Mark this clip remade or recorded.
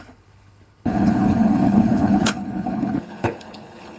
remade